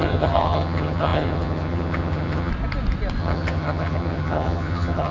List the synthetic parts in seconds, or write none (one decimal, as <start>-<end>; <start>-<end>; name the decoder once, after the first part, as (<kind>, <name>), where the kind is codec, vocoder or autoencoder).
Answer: 0.0-2.5 (vocoder, HiFi-GAN); 3.2-5.1